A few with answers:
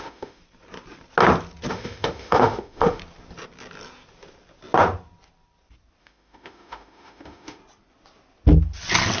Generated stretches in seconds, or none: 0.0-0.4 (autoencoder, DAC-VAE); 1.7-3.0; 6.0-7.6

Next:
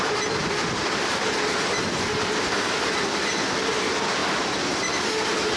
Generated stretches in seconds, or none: 0.4-3.6 (vocoder, BigVGAN v2)

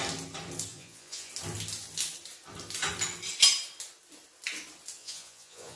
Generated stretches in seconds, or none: 0.7-1.3 (vocoder, Vocos); 5.0-5.8

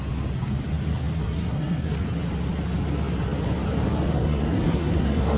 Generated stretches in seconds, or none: 1.2-1.9 (codec, SNAC); 4.1-5.4

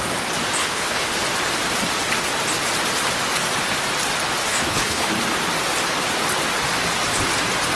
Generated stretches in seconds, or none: 0.6-1.1 (codec, HILCodec); 4.5-5.2